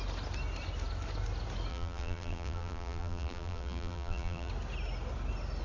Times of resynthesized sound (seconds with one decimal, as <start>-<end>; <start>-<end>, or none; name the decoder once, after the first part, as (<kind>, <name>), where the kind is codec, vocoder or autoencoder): 1.7-4.5 (vocoder, BigVGAN v2)